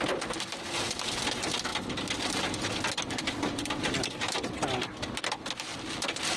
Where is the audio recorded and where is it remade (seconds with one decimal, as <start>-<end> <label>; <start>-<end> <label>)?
0.0-6.4 recorded